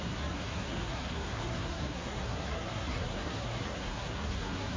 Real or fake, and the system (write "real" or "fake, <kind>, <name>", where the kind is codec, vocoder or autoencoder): fake, codec, SNAC